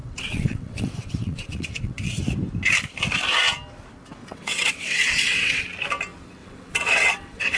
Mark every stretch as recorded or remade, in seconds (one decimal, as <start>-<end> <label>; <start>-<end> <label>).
0.0-2.2 remade; 2.2-4.2 recorded; 4.2-5.6 remade; 5.6-6.4 recorded; 6.4-7.6 remade